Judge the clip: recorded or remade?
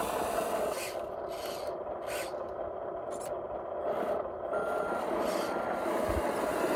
recorded